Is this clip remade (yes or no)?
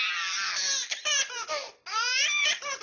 no